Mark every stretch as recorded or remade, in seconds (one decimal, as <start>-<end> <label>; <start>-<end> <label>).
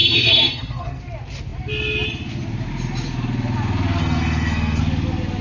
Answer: 0.0-1.0 remade; 1.0-4.0 recorded; 4.0-4.8 remade; 4.8-5.4 recorded